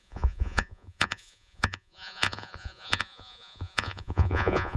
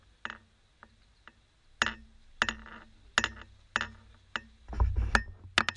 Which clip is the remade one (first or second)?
first